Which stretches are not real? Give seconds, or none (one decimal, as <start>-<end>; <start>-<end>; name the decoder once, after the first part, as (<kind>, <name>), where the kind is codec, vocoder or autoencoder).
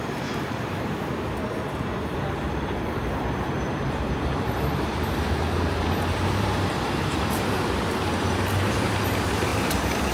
0.0-10.1 (vocoder, BigVGAN v2)